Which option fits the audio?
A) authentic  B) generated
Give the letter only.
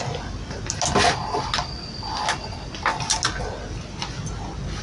A